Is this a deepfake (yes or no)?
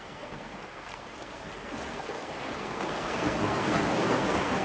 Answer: yes